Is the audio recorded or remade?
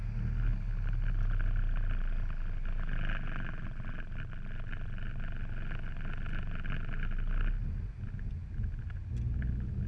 recorded